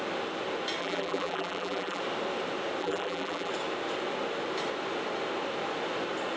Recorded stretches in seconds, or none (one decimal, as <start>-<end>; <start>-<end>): 0.0-0.8; 2.0-2.8; 3.5-6.4